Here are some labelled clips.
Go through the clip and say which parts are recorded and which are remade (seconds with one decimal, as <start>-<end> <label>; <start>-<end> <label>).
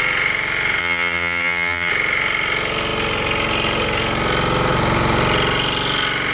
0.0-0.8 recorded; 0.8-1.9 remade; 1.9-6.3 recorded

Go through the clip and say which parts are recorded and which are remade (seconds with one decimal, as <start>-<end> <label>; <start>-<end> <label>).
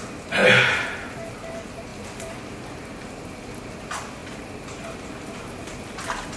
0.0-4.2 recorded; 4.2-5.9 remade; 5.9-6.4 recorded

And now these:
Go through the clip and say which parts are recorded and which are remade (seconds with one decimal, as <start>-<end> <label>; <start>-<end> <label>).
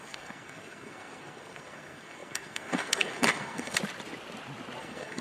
0.0-3.8 remade; 3.8-4.8 recorded; 4.8-5.2 remade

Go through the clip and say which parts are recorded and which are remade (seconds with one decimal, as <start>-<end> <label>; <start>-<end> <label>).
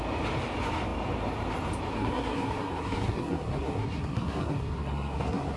0.0-1.9 recorded; 1.9-5.6 remade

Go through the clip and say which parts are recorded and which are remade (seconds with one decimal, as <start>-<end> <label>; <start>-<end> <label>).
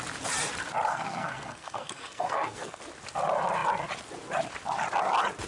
0.0-0.9 recorded; 0.9-2.8 remade; 2.8-5.5 recorded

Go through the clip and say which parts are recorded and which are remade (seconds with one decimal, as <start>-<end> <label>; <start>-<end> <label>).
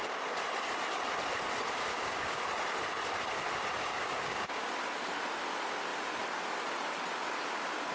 0.0-1.9 recorded; 1.9-2.5 remade; 2.5-3.9 recorded; 3.9-4.7 remade; 4.7-7.9 recorded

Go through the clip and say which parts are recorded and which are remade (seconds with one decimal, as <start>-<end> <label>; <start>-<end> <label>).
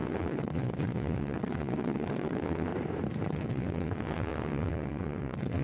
0.0-2.7 remade; 2.7-3.2 recorded; 3.2-5.6 remade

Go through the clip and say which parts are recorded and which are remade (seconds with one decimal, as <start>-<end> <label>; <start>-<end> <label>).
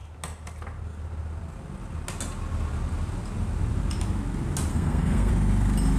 0.0-4.7 recorded; 4.7-5.3 remade; 5.3-6.0 recorded